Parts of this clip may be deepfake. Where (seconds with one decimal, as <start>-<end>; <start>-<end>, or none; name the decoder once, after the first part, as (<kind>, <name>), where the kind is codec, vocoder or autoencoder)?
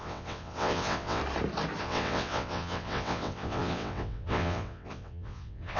0.0-1.2 (vocoder, WaveNeXt); 1.8-5.8